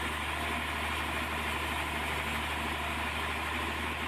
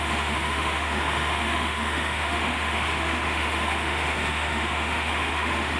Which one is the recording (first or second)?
first